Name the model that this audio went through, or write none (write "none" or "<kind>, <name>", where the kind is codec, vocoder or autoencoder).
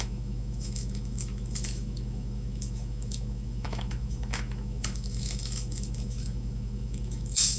autoencoder, DAC-VAE